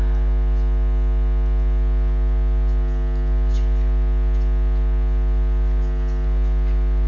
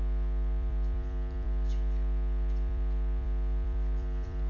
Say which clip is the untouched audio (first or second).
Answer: first